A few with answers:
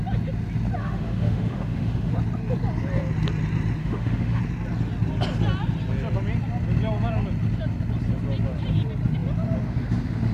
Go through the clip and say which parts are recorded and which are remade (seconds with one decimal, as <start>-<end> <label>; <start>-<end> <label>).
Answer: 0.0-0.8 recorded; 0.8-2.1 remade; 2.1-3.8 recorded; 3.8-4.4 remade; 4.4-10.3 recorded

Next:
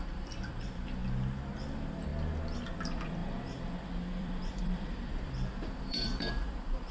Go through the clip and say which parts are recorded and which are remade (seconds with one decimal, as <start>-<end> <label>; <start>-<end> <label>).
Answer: 0.0-1.0 remade; 1.0-1.6 recorded; 1.6-2.1 remade; 2.1-2.6 recorded; 2.6-6.9 remade

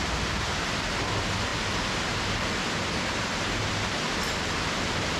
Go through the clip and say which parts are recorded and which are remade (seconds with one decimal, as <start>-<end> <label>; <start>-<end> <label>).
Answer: 0.0-5.2 recorded

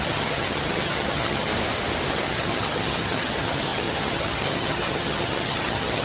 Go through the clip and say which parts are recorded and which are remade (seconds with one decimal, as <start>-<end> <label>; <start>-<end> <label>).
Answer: 0.0-1.5 remade; 1.5-2.1 recorded; 2.1-6.0 remade

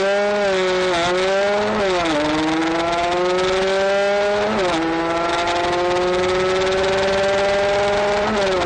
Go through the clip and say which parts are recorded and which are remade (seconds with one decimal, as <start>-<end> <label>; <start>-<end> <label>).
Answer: 0.0-8.7 recorded